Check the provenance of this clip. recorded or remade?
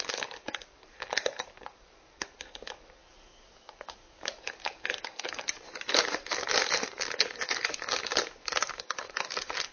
remade